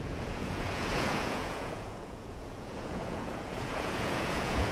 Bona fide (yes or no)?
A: no